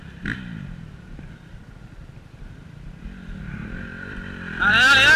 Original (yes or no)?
no